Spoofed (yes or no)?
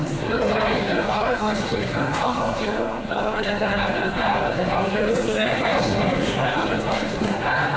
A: yes